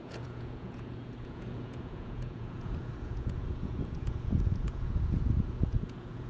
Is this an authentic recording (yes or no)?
no